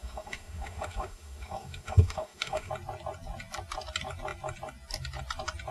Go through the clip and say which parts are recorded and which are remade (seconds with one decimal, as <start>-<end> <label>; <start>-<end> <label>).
0.0-2.7 remade; 2.7-5.7 recorded